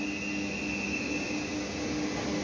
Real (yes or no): yes